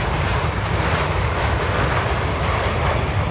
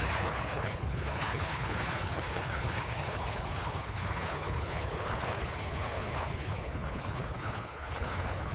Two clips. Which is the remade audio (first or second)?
second